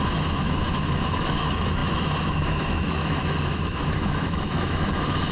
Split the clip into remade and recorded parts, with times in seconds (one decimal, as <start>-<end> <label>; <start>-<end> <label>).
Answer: 0.0-5.3 remade